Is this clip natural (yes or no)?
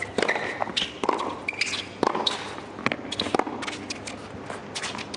yes